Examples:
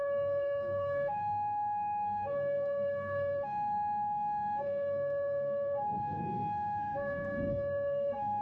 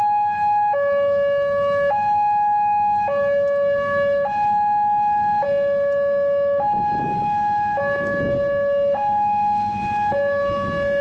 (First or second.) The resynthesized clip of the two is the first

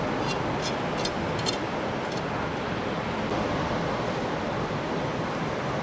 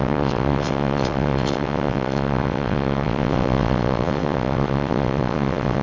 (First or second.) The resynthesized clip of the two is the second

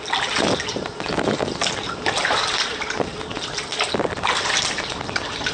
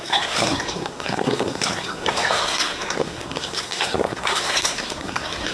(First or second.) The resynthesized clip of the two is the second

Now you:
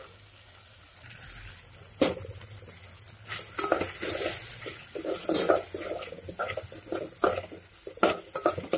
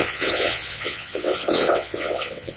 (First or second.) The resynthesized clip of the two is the second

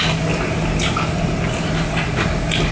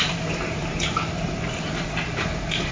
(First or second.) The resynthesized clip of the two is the second